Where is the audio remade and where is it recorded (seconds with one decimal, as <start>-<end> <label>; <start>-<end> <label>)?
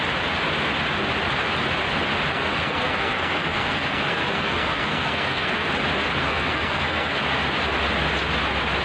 0.0-2.3 recorded; 2.3-5.7 remade; 5.7-6.2 recorded; 6.2-7.2 remade; 7.2-8.8 recorded